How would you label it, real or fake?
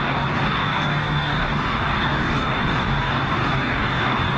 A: fake